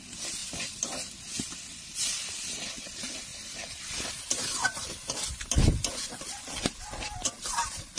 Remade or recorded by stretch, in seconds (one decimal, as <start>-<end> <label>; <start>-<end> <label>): 0.0-3.3 recorded; 3.3-5.9 remade; 5.9-8.0 recorded